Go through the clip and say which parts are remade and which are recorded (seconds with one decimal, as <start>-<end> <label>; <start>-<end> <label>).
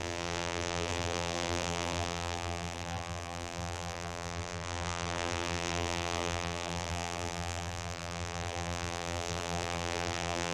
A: 0.0-10.5 remade